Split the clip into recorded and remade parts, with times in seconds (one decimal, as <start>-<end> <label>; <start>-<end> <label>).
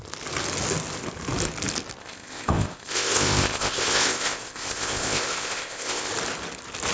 0.0-2.0 recorded; 2.0-6.1 remade; 6.1-6.9 recorded